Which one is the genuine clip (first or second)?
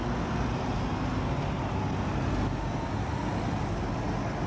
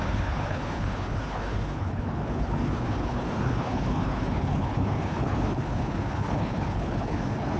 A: first